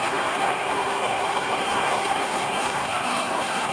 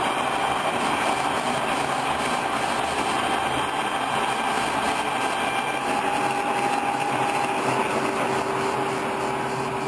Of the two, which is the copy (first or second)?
first